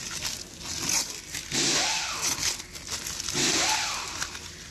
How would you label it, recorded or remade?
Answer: recorded